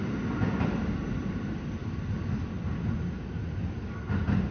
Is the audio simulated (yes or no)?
no